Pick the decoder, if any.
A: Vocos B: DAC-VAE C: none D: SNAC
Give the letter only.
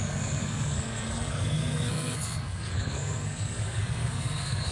D